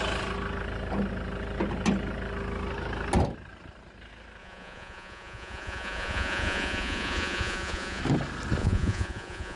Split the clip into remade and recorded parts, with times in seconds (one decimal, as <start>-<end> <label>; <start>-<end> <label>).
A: 0.0-4.4 recorded; 4.4-8.0 remade; 8.0-8.6 recorded; 8.6-9.6 remade